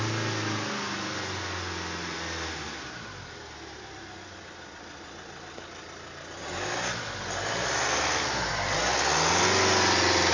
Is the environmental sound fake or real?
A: real